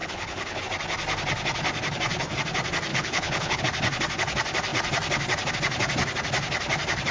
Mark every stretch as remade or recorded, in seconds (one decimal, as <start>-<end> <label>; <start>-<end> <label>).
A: 0.0-0.6 remade; 0.6-2.9 recorded; 2.9-3.6 remade; 3.6-7.1 recorded